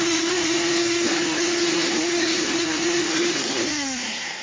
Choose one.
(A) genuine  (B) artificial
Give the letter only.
B